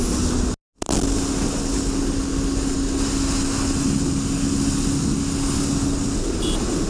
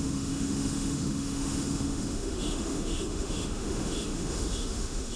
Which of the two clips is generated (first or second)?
second